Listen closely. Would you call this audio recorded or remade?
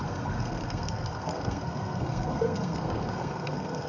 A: remade